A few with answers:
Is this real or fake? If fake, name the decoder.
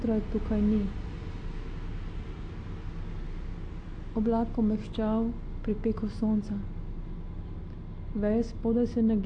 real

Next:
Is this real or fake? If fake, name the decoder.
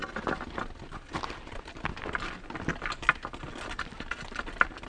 real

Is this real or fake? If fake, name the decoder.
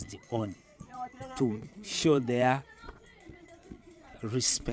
fake, vocoder, Vocos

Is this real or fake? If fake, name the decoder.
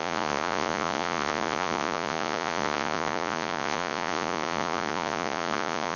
fake, vocoder, Vocos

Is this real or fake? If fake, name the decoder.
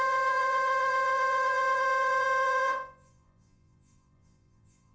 fake, vocoder, Vocos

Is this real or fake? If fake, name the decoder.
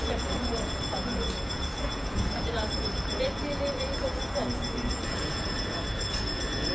fake, vocoder, Vocos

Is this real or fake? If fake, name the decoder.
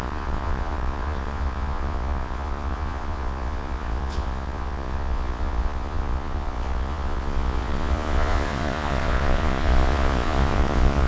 fake, vocoder, Vocos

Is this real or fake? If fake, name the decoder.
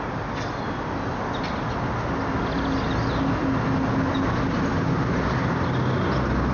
real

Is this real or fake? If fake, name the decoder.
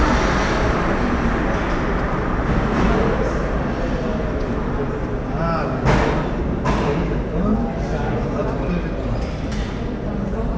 real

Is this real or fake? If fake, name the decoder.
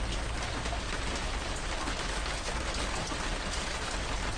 real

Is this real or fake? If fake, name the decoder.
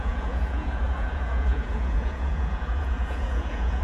fake, vocoder, Vocos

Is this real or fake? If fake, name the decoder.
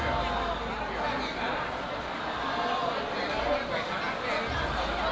real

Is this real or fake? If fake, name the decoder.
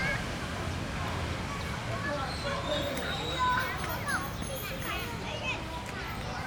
real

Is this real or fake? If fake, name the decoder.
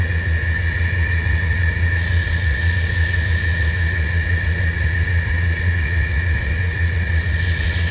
fake, vocoder, Vocos